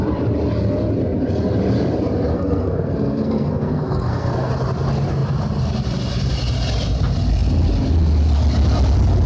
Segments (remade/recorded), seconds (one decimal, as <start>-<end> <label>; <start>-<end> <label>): 0.0-2.3 recorded; 2.3-4.5 remade; 4.5-9.3 recorded